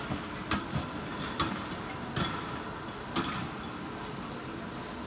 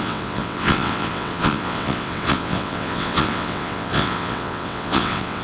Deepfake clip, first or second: second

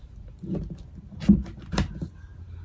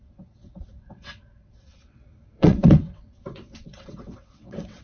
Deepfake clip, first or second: second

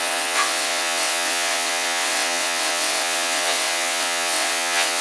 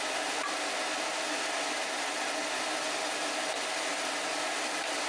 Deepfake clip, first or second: first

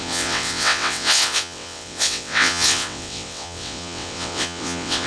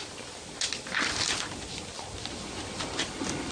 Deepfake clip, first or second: first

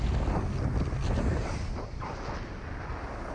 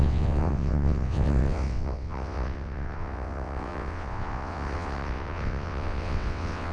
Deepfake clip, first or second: second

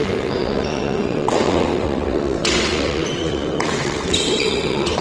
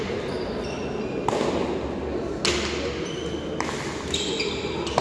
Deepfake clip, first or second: first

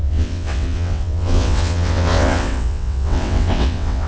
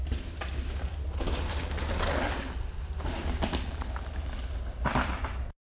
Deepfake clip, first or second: first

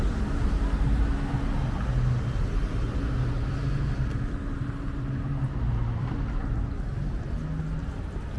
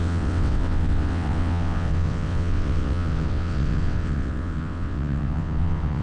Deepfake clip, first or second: second